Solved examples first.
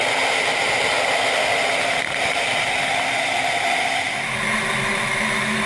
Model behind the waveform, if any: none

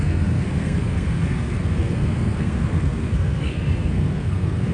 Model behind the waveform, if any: codec, SNAC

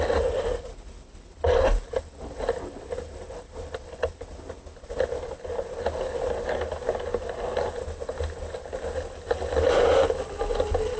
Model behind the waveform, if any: none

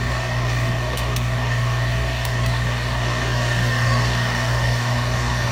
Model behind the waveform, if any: codec, DAC